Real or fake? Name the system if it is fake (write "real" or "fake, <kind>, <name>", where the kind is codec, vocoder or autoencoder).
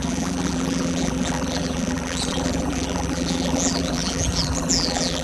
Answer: fake, vocoder, BigVGAN v2